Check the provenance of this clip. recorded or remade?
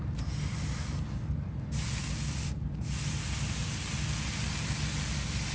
recorded